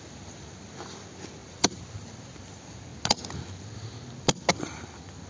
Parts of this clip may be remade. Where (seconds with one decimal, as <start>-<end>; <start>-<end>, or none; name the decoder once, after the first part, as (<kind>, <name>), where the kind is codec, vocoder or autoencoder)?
1.4-2.2 (vocoder, BigVGAN v2)

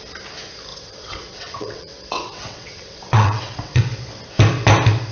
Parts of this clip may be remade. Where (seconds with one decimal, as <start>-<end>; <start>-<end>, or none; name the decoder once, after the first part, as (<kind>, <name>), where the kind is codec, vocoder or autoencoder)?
0.7-3.8 (vocoder, WaveNeXt)

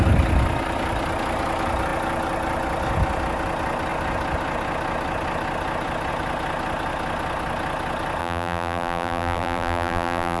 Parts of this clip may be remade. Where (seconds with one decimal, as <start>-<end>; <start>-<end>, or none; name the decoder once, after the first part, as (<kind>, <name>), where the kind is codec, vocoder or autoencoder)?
8.2-10.4 (vocoder, BigVGAN v2)

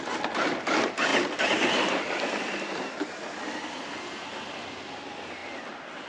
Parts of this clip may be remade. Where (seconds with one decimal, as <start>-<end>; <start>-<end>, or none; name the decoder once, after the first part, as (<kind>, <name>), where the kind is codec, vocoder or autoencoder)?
none

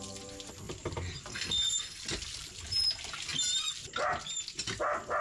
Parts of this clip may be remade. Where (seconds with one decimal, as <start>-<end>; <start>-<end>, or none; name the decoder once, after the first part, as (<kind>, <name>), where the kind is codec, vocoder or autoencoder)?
1.3-2.0 (codec, SNAC)

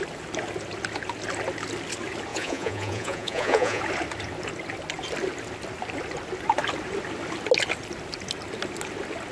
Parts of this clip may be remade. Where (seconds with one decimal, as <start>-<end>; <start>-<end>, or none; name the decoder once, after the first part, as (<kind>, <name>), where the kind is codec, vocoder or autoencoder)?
2.3-3.8 (vocoder, Vocos)

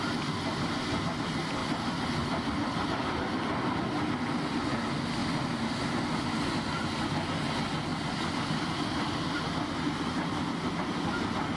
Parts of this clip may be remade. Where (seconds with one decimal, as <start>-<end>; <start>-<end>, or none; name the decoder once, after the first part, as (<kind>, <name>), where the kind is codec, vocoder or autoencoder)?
1.6-3.3 (vocoder, BigVGAN v2)